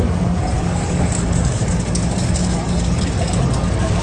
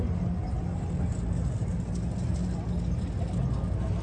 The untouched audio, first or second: second